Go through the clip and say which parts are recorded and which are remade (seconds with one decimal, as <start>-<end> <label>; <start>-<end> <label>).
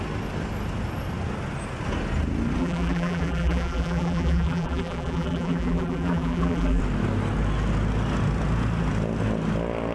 0.0-2.6 recorded; 2.6-6.8 remade; 6.8-9.9 recorded